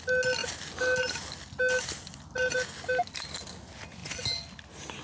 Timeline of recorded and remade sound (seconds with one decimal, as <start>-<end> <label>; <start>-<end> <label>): 0.0-5.0 recorded